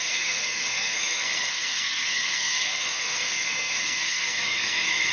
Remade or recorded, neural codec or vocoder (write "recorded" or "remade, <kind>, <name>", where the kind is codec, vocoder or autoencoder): remade, codec, SNAC